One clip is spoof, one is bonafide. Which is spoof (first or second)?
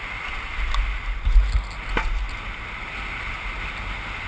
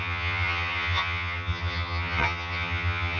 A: second